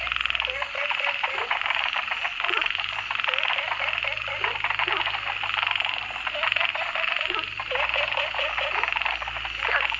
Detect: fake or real real